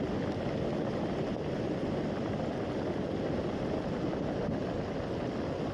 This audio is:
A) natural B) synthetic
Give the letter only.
A